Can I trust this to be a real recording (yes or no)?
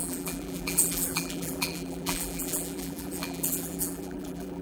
no